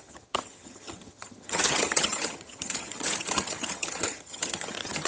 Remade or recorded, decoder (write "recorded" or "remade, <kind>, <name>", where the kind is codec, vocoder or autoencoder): remade, vocoder, HiFi-GAN